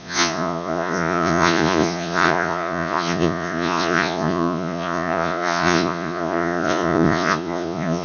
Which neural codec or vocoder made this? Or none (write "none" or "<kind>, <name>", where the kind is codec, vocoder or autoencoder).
vocoder, Vocos